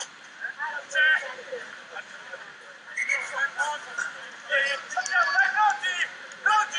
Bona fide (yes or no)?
yes